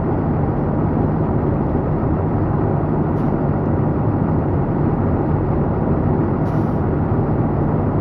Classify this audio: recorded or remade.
remade